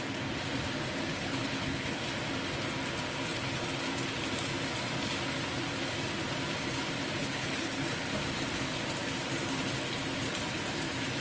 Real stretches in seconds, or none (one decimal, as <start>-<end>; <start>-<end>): 0.0-1.1; 2.0-7.2; 7.7-11.2